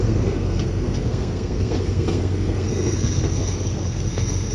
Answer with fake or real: fake